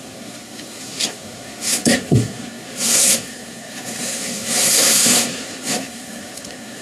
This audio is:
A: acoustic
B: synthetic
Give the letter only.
B